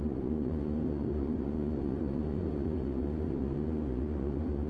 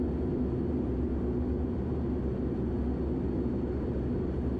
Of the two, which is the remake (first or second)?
first